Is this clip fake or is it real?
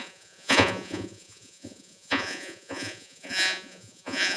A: fake